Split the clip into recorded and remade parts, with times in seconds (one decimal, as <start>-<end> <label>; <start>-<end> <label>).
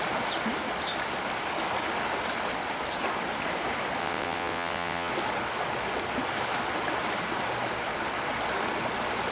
0.0-4.0 recorded; 4.0-5.1 remade; 5.1-9.3 recorded